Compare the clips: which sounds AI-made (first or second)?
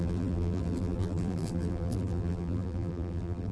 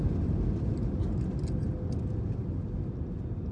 first